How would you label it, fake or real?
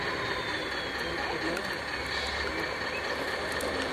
real